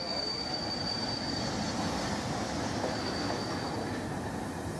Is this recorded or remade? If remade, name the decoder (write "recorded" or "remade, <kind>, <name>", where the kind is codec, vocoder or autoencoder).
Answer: recorded